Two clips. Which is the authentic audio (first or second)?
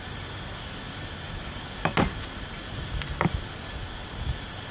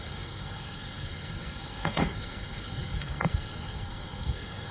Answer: first